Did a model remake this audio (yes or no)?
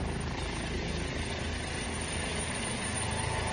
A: no